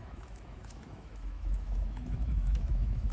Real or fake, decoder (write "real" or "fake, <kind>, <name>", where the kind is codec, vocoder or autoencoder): fake, autoencoder, DAC-VAE